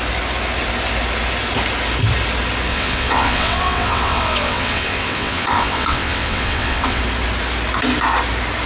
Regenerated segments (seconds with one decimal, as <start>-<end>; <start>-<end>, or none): 2.7-7.0